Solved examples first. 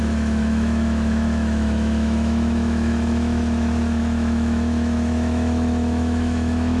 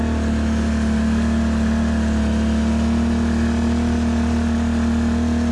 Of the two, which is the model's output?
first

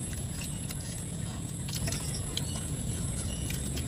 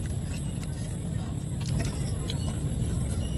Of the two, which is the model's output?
first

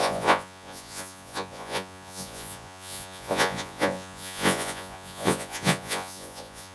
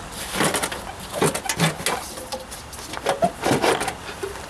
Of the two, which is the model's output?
first